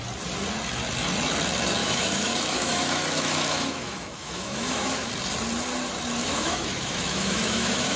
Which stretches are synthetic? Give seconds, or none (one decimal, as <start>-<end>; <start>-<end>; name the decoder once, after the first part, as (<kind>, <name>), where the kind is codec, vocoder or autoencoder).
1.8-5.1 (autoencoder, DAC-VAE); 6.2-8.0